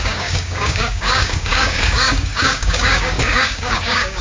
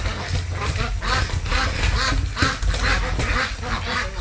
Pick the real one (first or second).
second